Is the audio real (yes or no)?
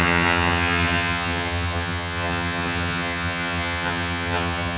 no